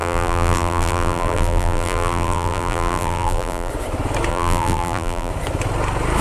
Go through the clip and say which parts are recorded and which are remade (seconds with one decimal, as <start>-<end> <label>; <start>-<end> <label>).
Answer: 0.0-3.7 remade; 3.7-4.3 recorded; 4.3-5.3 remade; 5.3-6.2 recorded